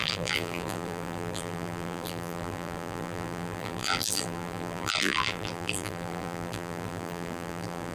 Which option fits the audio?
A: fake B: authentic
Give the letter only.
A